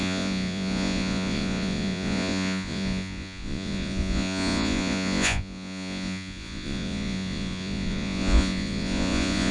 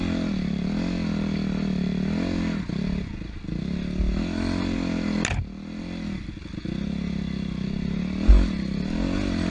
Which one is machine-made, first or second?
first